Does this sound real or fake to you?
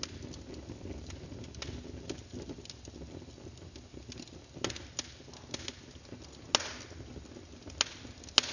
real